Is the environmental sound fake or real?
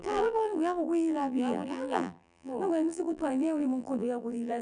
fake